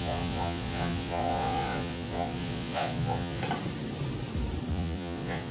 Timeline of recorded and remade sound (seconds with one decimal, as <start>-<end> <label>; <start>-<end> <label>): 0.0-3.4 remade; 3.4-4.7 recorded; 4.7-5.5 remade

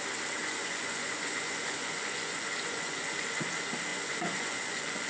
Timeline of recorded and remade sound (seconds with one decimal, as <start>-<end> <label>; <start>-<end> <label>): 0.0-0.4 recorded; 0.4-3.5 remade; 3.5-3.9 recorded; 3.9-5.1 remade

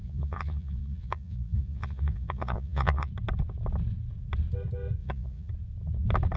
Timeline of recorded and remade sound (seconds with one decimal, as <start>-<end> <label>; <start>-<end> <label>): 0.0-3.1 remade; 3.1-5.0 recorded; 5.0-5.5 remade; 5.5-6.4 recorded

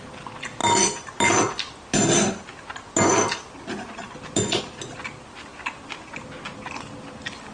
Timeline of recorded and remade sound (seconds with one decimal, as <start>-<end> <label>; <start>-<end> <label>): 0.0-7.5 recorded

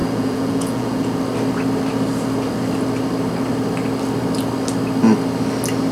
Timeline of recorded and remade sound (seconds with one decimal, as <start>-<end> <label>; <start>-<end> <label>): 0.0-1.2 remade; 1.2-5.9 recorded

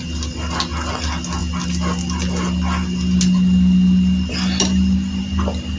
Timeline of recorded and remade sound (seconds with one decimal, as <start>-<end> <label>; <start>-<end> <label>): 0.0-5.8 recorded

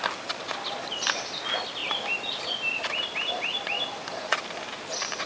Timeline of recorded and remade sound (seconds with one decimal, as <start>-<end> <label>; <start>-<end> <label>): 0.0-5.3 recorded